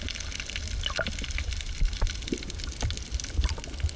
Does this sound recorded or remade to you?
recorded